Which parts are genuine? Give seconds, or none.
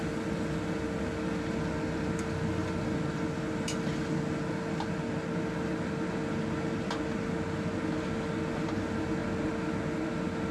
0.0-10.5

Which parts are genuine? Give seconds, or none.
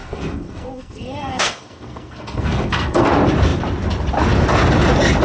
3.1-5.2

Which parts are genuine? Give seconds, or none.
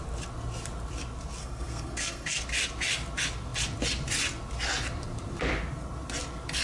0.0-1.4; 2.4-6.6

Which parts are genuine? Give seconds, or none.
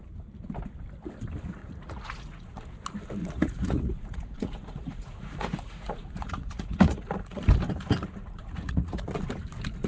0.0-1.6; 2.6-3.2; 7.5-8.2; 9.1-9.9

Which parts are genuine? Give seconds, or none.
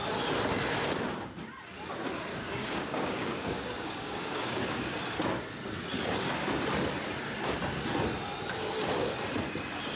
0.0-2.3; 5.0-10.0